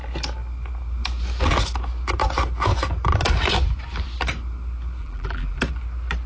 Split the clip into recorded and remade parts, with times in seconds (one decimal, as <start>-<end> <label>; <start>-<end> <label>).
0.0-5.0 recorded; 5.0-5.6 remade; 5.6-6.3 recorded